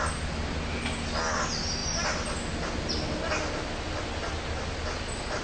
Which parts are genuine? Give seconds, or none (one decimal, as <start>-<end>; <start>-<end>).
0.0-5.4

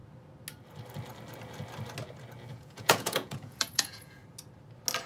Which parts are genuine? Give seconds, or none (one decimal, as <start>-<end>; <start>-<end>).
0.0-2.5; 4.2-5.1